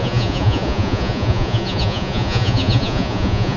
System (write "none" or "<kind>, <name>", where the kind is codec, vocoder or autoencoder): vocoder, Vocos